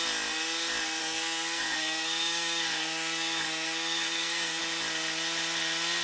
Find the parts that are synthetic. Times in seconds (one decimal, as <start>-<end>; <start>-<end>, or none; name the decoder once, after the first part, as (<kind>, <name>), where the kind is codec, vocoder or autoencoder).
1.0-4.6 (codec, SNAC)